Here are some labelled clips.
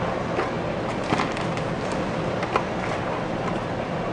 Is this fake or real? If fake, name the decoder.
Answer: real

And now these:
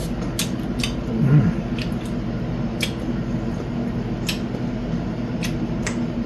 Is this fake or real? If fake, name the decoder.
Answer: real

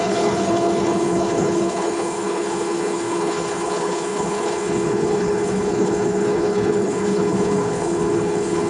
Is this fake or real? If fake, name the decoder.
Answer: fake, codec, HILCodec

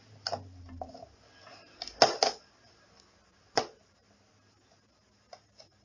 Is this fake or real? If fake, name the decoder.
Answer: real